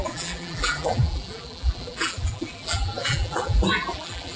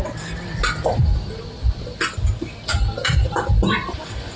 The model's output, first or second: first